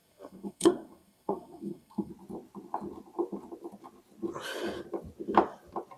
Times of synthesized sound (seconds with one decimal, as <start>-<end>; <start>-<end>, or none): 0.0-2.1